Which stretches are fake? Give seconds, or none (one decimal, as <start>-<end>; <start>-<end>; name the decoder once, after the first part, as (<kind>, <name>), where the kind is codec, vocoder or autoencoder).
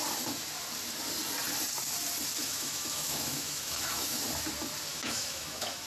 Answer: 2.4-4.2 (autoencoder, DAC-VAE); 4.9-5.9